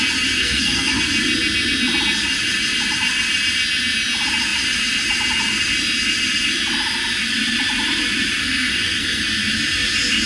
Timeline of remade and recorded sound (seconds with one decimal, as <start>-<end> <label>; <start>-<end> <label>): 0.0-0.4 recorded; 0.4-1.0 remade; 1.0-8.4 recorded; 8.4-9.2 remade; 9.2-10.3 recorded